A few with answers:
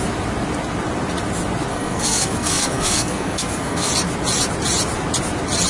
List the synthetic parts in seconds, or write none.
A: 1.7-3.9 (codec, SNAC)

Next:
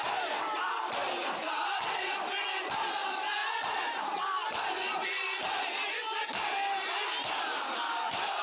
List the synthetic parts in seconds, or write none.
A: none